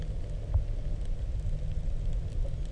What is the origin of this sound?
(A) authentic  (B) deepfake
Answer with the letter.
A